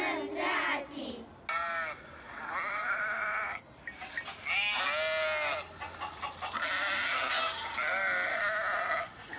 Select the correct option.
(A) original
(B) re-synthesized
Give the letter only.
A